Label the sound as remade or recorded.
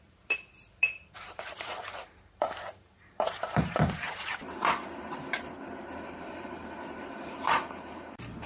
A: remade